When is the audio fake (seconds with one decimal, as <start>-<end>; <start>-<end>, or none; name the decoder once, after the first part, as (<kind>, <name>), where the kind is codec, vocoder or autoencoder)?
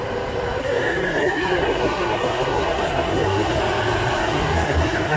0.6-3.6 (codec, SNAC); 4.2-5.2